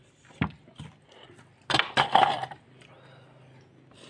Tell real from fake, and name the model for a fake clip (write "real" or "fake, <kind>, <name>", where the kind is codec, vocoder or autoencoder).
real